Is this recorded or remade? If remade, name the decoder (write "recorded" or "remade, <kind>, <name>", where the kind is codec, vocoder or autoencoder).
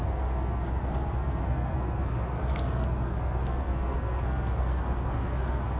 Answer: remade, codec, SNAC